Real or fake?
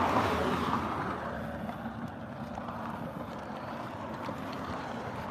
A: real